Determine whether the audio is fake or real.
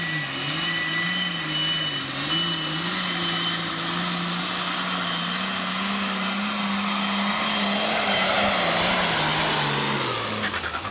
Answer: real